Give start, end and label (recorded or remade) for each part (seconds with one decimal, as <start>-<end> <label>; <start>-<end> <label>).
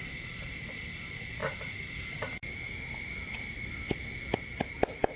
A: 0.0-1.4 recorded; 1.4-3.7 remade; 3.7-5.2 recorded